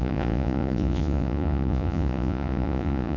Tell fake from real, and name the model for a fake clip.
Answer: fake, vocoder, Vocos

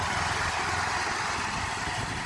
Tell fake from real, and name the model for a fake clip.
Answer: real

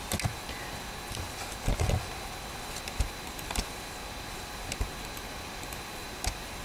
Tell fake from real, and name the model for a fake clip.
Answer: real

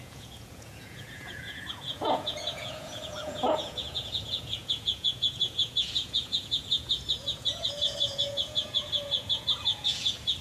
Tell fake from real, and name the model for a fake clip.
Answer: fake, vocoder, Vocos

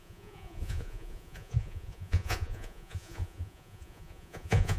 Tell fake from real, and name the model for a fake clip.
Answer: fake, vocoder, Vocos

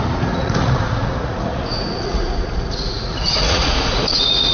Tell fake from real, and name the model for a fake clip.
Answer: fake, vocoder, Vocos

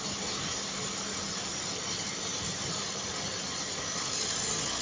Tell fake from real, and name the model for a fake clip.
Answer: real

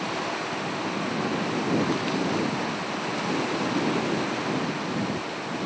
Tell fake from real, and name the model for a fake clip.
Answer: real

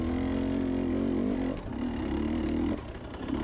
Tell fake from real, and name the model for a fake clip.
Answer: real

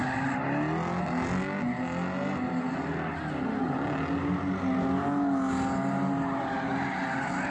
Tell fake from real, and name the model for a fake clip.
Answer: real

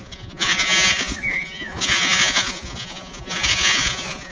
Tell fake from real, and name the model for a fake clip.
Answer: fake, vocoder, Vocos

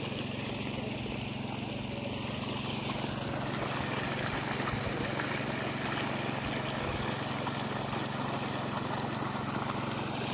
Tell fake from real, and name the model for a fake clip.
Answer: real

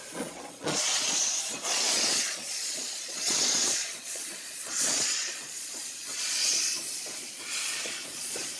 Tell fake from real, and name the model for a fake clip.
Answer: fake, vocoder, Vocos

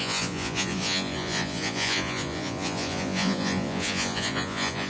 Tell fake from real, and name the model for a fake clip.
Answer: fake, vocoder, Vocos